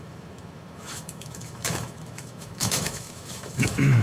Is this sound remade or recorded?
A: remade